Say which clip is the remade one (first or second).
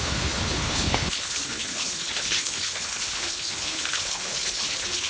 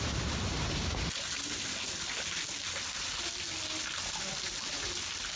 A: first